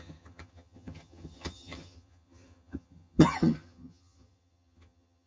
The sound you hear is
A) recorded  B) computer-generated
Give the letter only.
B